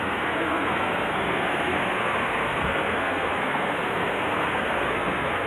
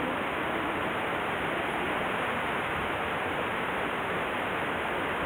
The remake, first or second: first